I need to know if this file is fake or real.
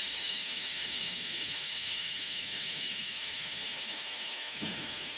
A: fake